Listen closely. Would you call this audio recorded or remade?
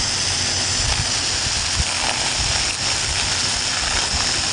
recorded